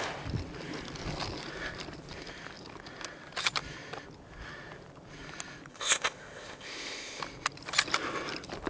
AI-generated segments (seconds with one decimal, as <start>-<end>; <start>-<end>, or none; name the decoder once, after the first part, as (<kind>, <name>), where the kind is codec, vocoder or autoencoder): 5.7-7.2 (codec, ZipCodec)